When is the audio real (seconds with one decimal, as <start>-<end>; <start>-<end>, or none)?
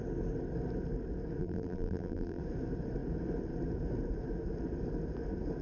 0.0-1.4; 2.4-5.6